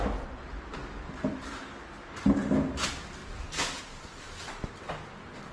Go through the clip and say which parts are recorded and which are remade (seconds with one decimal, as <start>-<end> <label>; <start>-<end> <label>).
0.0-5.5 recorded